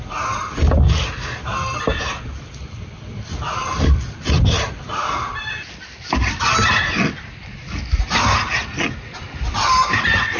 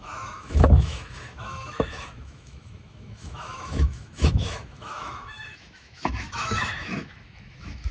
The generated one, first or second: second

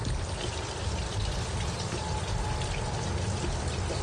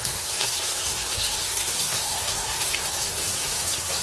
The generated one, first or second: second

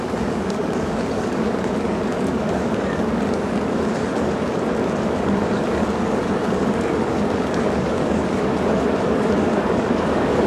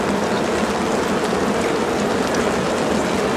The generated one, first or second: first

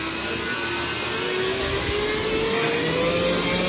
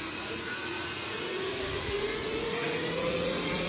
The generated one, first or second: second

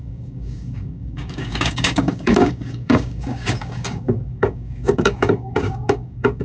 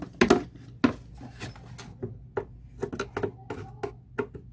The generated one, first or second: first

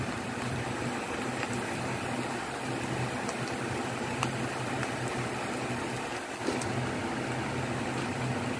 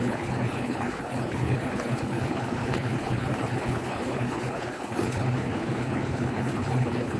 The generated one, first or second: second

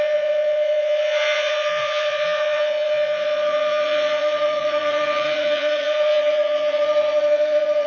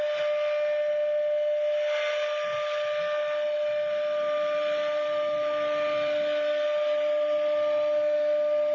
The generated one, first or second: first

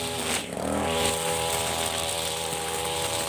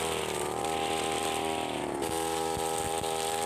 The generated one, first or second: first